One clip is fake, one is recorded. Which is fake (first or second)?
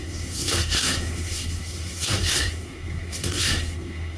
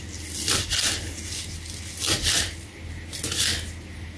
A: first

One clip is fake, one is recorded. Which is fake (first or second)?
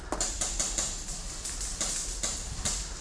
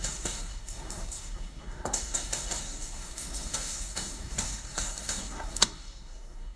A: second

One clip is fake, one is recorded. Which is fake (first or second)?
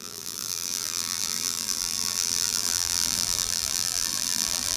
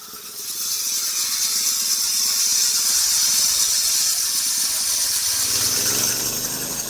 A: first